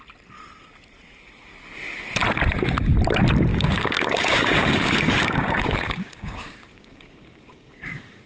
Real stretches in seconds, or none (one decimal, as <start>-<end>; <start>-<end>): 0.0-3.5